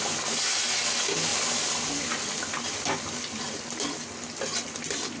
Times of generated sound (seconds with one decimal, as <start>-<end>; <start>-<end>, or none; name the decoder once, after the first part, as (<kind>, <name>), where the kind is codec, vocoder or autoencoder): none